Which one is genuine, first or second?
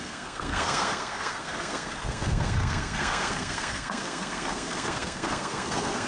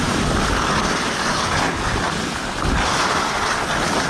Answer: second